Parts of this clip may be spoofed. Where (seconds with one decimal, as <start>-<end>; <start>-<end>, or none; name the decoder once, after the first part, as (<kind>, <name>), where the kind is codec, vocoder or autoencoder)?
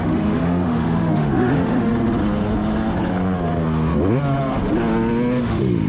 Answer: 0.0-1.9 (autoencoder, DAC-VAE); 5.4-5.9